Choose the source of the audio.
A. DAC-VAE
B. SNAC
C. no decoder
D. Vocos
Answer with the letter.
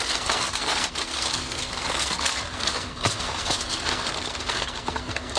B